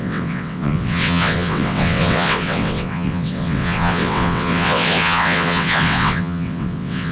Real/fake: fake